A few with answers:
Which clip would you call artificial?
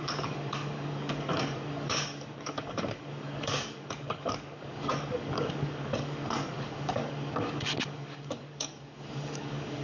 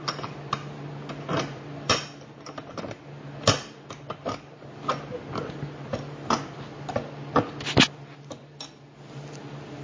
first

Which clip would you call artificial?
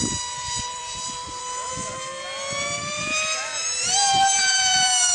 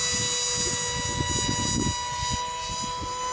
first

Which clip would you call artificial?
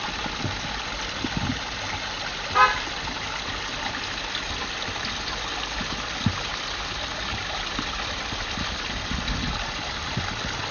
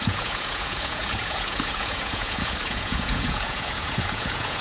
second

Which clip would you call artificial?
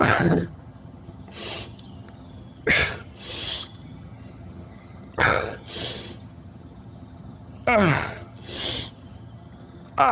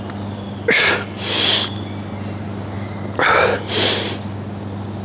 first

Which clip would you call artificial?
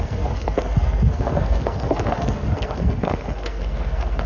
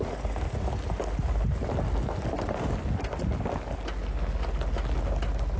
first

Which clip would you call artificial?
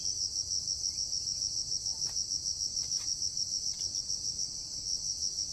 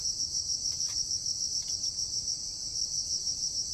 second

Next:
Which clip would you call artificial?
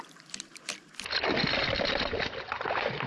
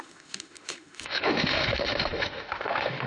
second